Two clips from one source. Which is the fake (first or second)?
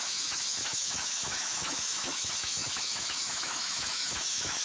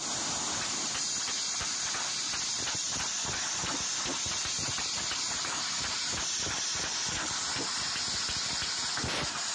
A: first